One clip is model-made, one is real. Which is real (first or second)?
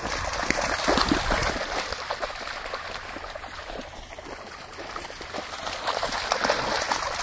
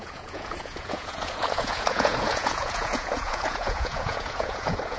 first